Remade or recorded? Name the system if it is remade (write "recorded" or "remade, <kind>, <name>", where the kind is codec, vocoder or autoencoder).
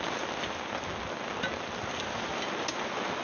recorded